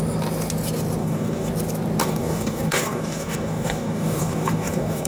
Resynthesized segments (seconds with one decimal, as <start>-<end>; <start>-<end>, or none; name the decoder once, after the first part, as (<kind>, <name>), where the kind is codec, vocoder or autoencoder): 1.0-1.5 (codec, DAC); 2.0-5.1